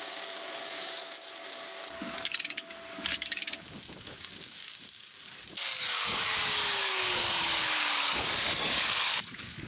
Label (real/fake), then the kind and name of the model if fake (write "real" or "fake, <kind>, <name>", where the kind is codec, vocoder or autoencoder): fake, codec, DAC